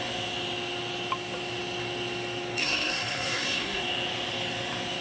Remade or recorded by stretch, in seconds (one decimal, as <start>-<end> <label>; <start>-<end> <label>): 0.0-2.6 recorded; 2.6-3.8 remade; 3.8-5.0 recorded